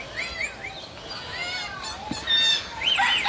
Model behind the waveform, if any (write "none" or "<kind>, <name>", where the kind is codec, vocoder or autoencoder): none